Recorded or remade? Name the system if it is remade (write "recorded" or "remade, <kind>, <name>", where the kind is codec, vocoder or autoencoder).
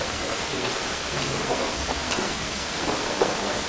remade, codec, SNAC